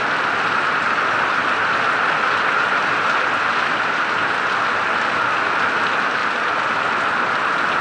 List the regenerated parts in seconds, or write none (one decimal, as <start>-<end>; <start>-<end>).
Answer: none

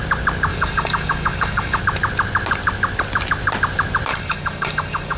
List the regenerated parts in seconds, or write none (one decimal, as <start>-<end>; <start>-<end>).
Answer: 0.5-1.8; 4.1-5.2

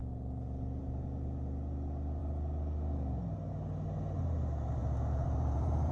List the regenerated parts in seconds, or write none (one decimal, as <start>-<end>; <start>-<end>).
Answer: 4.8-5.9

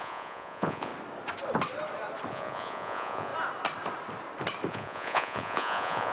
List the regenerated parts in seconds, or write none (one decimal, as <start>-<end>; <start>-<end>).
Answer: 0.0-0.9; 2.3-3.3; 4.7-6.1

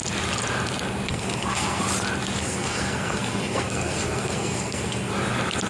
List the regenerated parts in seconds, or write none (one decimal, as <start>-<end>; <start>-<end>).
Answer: 1.1-1.8; 2.4-5.1

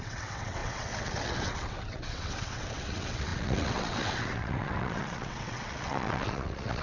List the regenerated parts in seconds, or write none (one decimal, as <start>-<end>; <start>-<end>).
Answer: 0.0-6.8